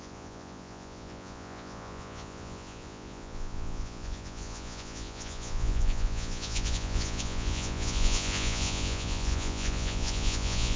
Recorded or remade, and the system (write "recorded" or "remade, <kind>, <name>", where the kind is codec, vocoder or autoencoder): remade, vocoder, Vocos